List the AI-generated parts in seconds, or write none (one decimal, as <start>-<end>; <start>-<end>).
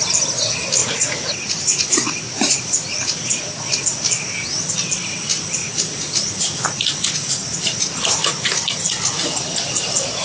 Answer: 0.8-3.4; 5.6-8.5